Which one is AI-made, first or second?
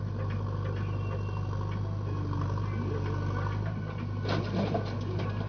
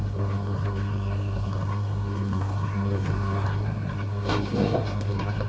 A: second